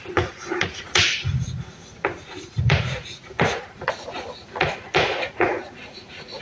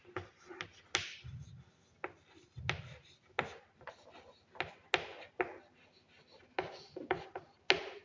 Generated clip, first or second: first